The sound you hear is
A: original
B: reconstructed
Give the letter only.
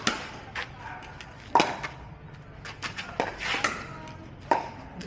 A